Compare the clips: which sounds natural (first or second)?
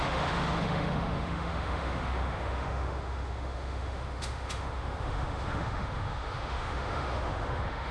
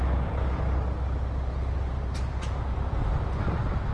second